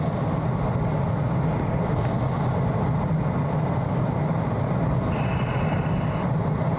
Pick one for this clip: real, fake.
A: real